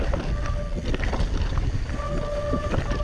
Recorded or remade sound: recorded